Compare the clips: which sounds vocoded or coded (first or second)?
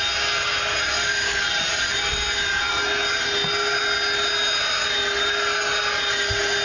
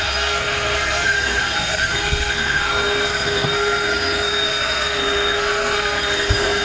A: second